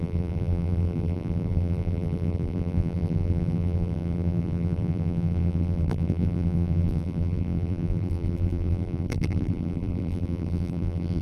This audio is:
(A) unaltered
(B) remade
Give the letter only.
B